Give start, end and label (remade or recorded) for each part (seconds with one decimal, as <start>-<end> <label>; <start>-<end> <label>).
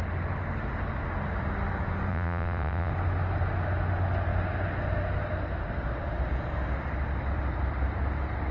0.0-2.1 recorded; 2.1-2.9 remade; 2.9-8.5 recorded